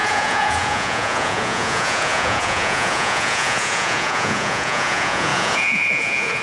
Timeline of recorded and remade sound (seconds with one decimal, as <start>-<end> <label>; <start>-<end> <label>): 0.0-6.4 remade

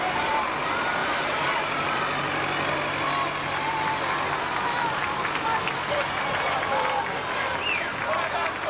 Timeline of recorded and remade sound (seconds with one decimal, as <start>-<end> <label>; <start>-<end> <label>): 0.0-1.0 recorded; 1.0-2.0 remade; 2.0-8.7 recorded

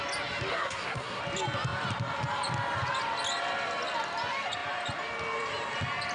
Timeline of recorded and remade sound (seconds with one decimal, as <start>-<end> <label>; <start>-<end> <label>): 0.0-0.5 recorded; 0.5-1.2 remade; 1.2-6.1 recorded

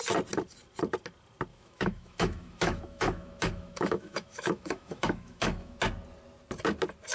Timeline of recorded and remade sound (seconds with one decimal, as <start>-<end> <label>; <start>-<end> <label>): 0.0-1.5 recorded; 1.5-5.8 remade; 5.8-7.1 recorded